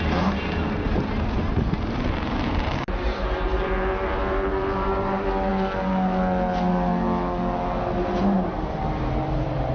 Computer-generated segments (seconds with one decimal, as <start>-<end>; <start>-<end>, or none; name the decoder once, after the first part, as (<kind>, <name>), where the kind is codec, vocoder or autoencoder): 0.0-5.5 (vocoder, BigVGAN v2); 8.0-9.7